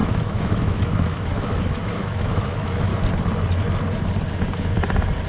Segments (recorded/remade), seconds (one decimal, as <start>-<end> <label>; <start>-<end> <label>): 0.0-2.9 remade; 2.9-5.3 recorded